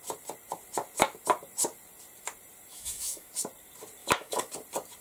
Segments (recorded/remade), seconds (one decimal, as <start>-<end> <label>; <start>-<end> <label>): 0.0-2.7 recorded; 2.7-3.3 remade; 3.3-4.0 recorded; 4.0-4.5 remade; 4.5-5.0 recorded